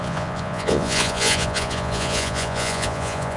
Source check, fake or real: fake